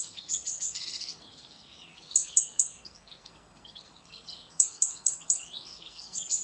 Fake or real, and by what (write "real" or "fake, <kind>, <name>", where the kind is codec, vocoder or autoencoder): fake, codec, SNAC